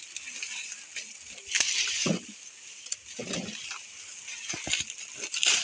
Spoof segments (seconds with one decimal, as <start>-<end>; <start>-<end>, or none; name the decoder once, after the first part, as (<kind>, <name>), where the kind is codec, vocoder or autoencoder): none